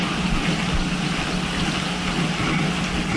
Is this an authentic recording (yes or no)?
yes